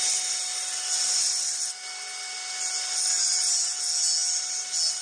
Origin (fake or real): real